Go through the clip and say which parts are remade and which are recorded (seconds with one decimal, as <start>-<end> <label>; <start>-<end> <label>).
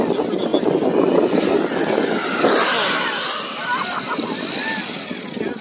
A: 0.0-5.6 recorded